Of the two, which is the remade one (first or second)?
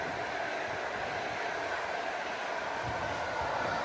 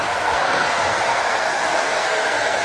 second